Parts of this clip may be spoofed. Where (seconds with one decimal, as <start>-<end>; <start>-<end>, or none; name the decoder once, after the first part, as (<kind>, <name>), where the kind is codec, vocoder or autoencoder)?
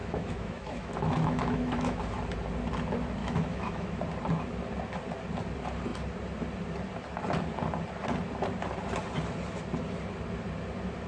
0.0-2.0 (autoencoder, DAC-VAE); 3.2-4.0